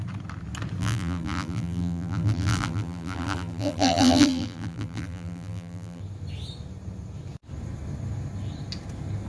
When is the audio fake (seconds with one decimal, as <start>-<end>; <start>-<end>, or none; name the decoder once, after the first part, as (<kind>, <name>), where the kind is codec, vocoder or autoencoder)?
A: 0.8-6.0 (vocoder, BigVGAN v2)